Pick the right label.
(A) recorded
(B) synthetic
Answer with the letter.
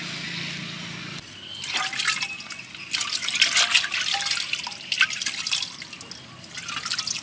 A